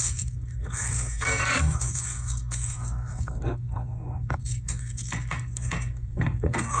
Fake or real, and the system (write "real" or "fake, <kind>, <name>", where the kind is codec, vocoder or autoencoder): fake, codec, SNAC